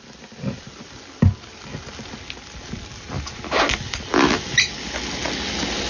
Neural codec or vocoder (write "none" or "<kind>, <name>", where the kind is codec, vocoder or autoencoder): none